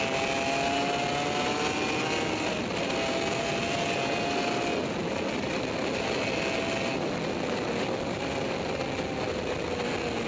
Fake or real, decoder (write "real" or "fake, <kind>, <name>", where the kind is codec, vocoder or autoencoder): real